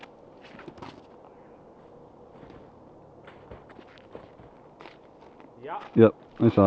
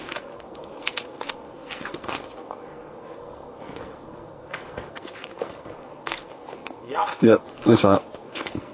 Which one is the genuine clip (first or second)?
first